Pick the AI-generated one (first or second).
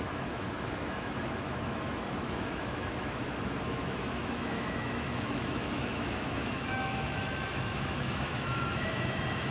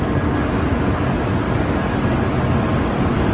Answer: first